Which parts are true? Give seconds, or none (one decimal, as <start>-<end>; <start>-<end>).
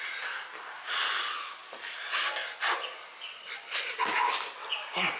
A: 0.0-5.2